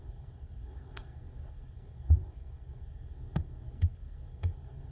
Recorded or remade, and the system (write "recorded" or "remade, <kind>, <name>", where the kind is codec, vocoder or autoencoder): remade, codec, SNAC